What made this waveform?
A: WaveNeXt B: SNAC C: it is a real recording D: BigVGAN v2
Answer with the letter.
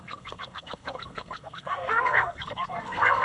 B